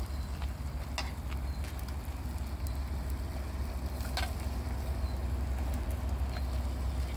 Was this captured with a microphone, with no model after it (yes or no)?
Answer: yes